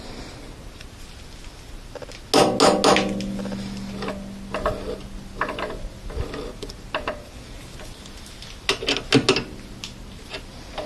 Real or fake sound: real